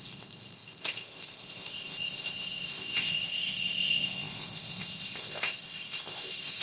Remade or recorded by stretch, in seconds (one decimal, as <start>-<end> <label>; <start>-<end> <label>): 0.0-6.6 remade

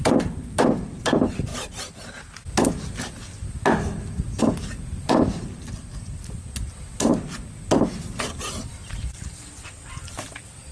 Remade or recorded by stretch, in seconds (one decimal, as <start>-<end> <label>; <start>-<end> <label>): 0.0-1.5 remade; 1.5-4.4 recorded; 4.4-7.1 remade; 7.1-8.7 recorded; 8.7-10.7 remade

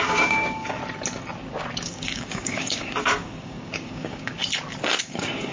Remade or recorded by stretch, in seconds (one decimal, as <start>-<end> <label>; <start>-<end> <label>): 0.0-0.8 remade; 0.8-1.8 recorded; 1.8-4.4 remade; 4.4-5.0 recorded; 5.0-5.5 remade